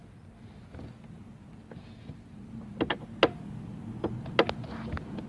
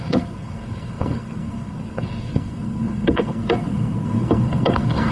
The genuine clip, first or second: first